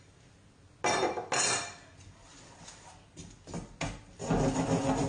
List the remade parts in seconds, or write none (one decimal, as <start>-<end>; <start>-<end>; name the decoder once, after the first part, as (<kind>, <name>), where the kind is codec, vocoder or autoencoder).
none